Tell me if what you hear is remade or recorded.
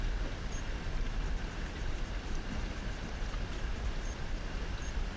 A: remade